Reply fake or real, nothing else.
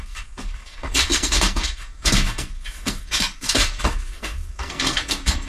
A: fake